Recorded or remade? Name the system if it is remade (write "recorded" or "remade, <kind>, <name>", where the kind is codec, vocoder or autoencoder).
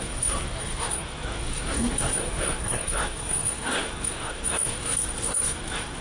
remade, codec, SNAC